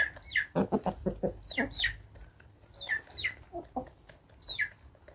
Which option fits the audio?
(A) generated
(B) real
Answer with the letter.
B